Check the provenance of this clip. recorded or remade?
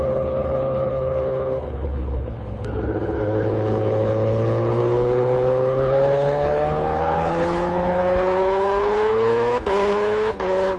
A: remade